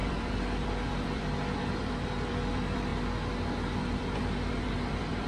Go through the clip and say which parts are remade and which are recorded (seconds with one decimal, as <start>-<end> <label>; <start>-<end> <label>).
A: 0.0-2.9 remade; 2.9-3.8 recorded; 3.8-5.3 remade